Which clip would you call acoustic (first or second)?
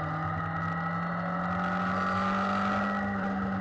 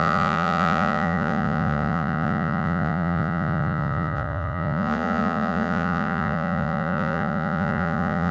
first